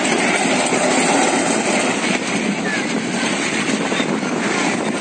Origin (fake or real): real